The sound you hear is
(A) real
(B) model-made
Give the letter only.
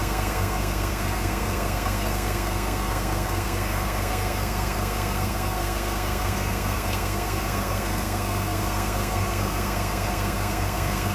B